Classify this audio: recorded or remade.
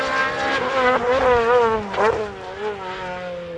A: recorded